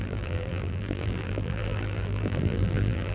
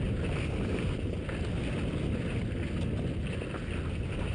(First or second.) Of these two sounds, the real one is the second